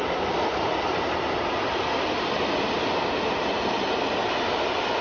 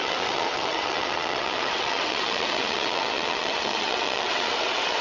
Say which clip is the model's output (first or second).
second